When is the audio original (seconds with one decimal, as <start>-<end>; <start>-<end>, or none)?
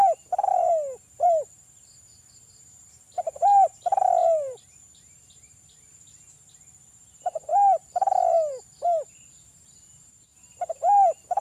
0.7-4.2; 5.8-11.4